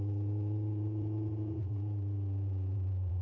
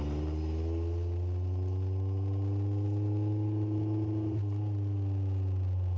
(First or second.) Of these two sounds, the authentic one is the second